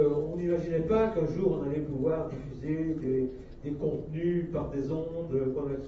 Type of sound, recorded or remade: recorded